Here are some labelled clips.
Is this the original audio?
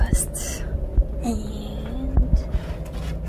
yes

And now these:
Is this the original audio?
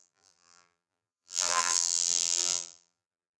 no